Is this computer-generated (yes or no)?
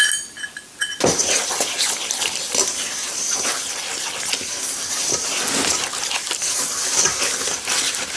no